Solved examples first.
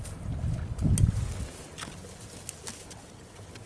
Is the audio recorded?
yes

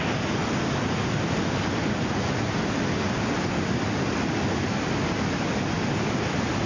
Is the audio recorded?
yes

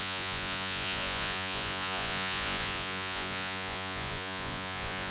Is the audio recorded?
no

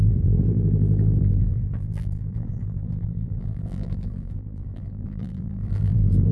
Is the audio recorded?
no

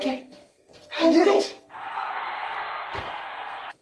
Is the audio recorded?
no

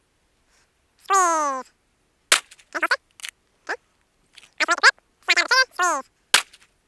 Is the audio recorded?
yes